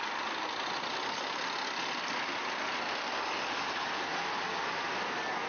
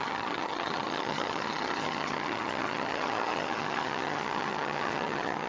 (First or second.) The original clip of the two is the first